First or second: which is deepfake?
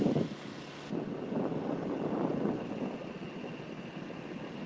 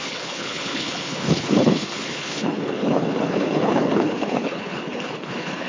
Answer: second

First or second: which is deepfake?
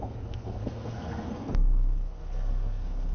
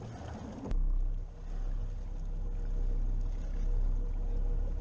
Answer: first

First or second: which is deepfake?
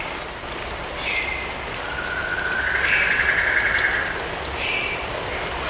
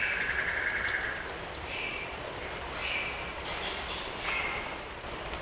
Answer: second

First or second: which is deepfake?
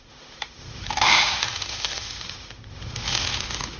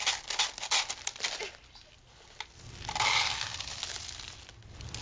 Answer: first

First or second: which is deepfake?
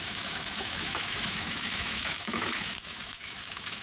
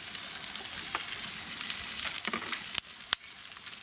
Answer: first